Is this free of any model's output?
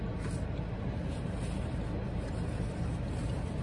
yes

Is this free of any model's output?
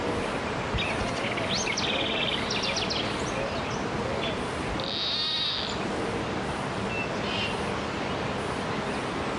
yes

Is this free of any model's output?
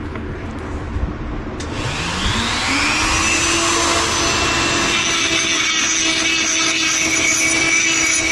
yes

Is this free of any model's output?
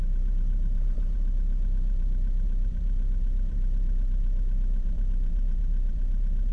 no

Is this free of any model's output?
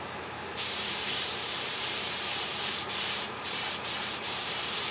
no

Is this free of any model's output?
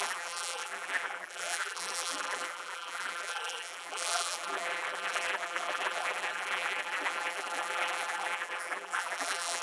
no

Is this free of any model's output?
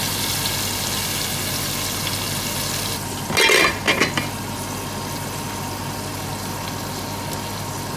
yes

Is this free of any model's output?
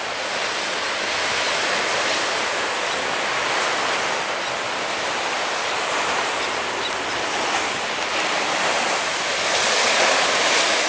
yes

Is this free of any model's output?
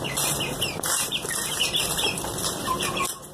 no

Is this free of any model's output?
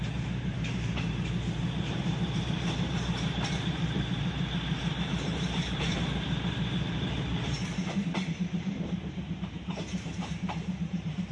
no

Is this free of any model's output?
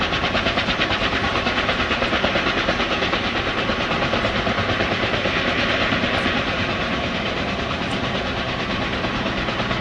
no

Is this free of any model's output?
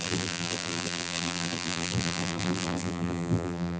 no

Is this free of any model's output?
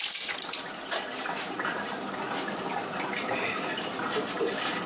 no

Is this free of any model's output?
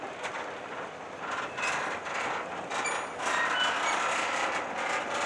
yes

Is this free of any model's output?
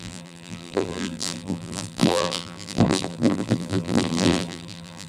no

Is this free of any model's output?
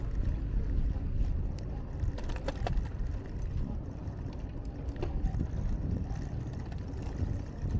yes